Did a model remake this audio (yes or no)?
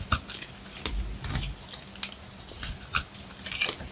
no